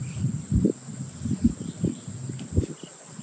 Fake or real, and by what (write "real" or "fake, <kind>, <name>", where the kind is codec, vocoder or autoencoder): real